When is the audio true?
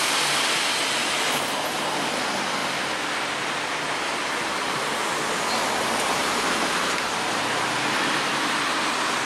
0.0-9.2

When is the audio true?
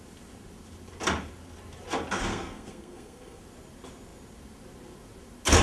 0.0-2.3; 3.4-5.6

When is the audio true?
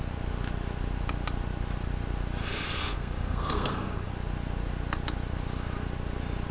0.0-2.4; 4.1-6.5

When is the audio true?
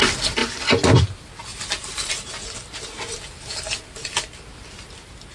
0.0-5.3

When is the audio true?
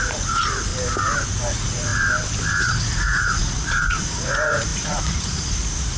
0.7-1.3; 1.9-2.6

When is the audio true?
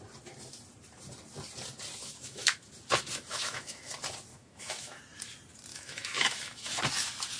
0.0-2.0; 2.7-3.3; 3.9-4.3; 5.0-5.7; 6.8-7.4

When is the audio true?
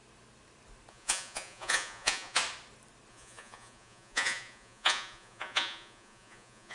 0.0-0.9; 2.4-3.1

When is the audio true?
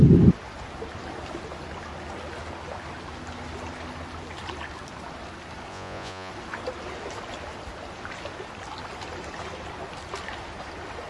0.0-5.7; 6.3-11.1